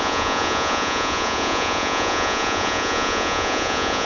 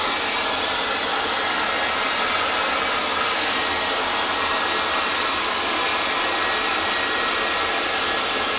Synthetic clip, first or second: first